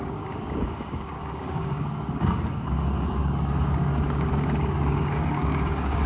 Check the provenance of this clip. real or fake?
fake